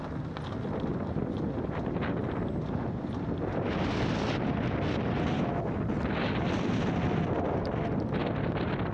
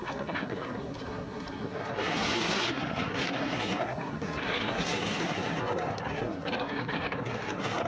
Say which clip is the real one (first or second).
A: first